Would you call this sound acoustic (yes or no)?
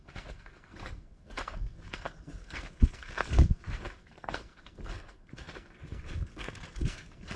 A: no